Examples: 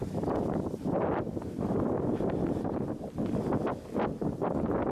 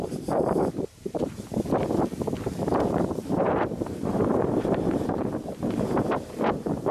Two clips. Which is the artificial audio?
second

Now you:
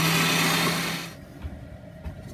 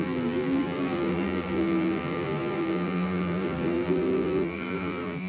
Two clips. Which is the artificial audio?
second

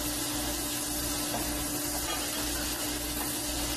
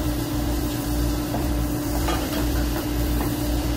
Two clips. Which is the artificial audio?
second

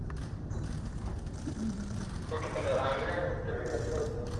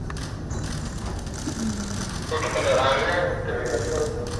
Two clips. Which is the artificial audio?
first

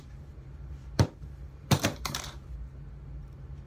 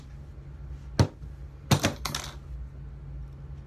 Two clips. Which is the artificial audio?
first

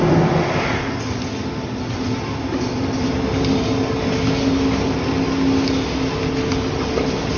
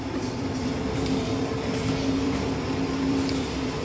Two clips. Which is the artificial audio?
second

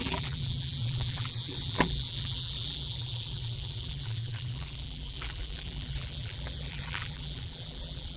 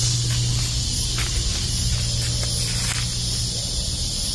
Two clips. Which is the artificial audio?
first